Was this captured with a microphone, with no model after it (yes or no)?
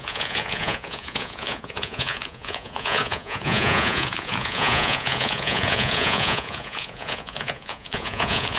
no